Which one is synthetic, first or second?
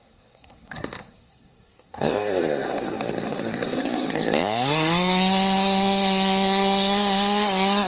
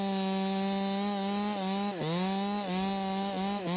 first